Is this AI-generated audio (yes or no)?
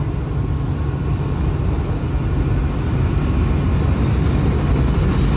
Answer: no